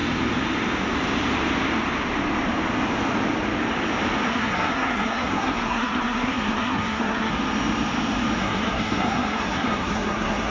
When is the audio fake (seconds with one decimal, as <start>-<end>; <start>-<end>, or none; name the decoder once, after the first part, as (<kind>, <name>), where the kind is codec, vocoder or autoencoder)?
4.3-7.3 (codec, SNAC); 8.4-10.5